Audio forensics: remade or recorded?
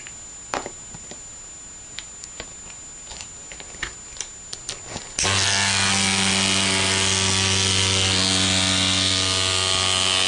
recorded